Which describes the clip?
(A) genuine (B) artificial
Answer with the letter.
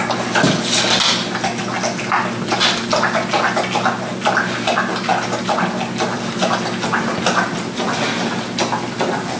A